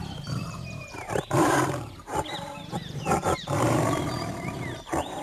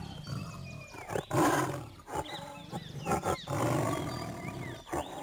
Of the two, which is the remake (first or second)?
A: first